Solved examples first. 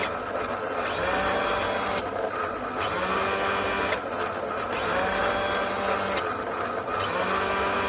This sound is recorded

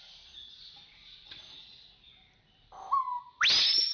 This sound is recorded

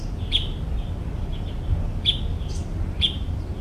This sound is recorded